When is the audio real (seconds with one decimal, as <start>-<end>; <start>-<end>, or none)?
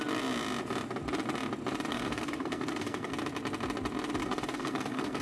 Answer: 0.0-1.9; 3.1-4.2